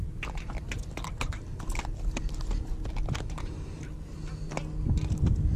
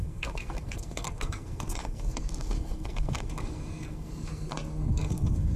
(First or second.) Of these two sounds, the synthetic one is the second